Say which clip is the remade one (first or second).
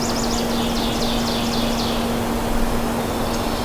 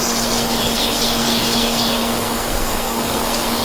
second